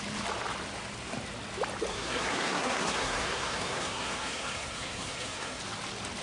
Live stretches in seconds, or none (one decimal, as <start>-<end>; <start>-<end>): 0.0-1.9; 5.6-6.2